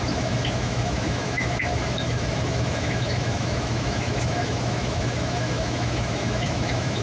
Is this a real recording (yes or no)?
no